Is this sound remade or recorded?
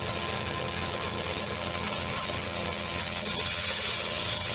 remade